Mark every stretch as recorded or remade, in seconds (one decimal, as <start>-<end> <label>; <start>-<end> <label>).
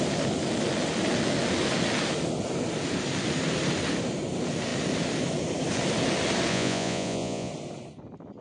0.0-6.5 recorded; 6.5-7.5 remade; 7.5-8.4 recorded